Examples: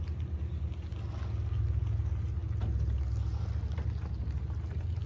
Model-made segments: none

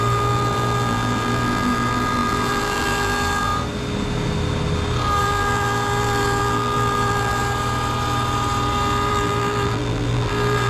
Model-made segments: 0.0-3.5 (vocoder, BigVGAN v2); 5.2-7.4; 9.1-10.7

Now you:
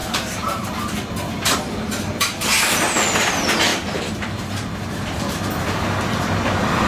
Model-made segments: 0.0-0.7 (vocoder, BigVGAN v2); 3.7-5.3